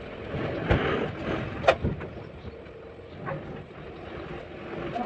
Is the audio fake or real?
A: real